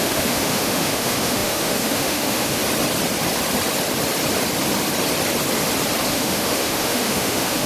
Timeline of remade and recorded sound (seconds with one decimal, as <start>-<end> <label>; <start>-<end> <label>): 0.0-2.6 remade; 2.6-6.1 recorded; 6.1-7.7 remade